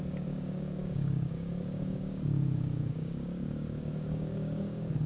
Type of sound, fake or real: fake